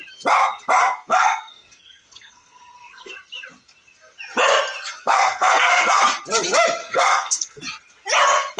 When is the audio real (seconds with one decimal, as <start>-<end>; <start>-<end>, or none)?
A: 0.0-0.8; 3.1-5.0; 6.0-6.8; 7.6-8.6